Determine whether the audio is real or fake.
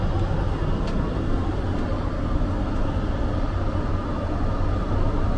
real